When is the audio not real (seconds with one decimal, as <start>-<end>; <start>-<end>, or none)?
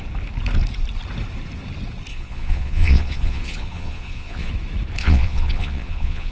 2.1-4.5; 5.0-6.3